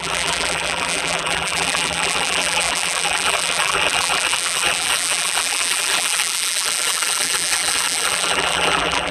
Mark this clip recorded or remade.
remade